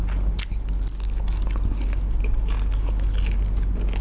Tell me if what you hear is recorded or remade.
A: recorded